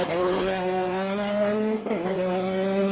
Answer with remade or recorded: remade